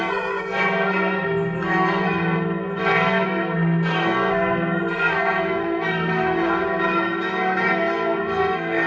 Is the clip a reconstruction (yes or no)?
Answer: yes